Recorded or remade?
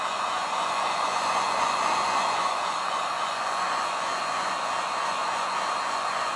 remade